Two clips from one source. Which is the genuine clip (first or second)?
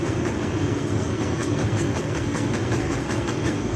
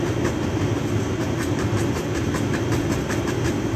second